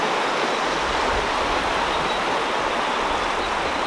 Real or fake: real